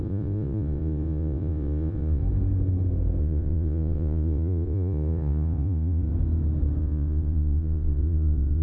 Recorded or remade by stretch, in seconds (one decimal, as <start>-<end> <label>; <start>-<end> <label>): 0.0-2.2 remade; 2.2-3.2 recorded; 3.2-6.1 remade; 6.1-6.8 recorded; 6.8-8.6 remade